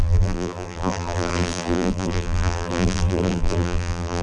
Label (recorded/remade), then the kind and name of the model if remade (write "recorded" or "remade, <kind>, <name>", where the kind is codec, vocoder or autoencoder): remade, vocoder, BigVGAN v2